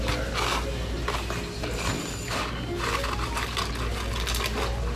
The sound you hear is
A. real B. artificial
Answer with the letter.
A